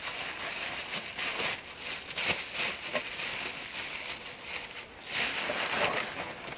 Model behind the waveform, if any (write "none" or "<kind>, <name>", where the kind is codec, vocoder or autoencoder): none